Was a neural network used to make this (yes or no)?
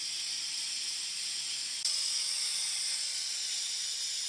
no